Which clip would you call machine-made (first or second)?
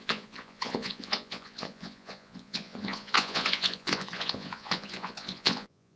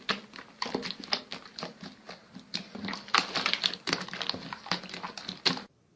first